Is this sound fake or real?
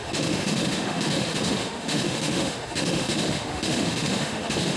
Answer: fake